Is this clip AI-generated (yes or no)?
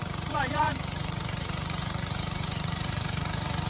yes